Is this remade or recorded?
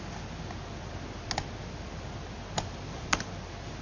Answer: recorded